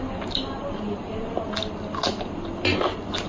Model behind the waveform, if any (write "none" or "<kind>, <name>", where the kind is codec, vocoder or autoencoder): none